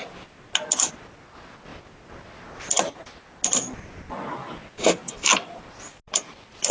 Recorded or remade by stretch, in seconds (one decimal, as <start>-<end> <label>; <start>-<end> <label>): 0.0-6.7 recorded